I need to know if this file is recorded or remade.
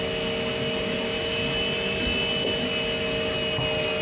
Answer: recorded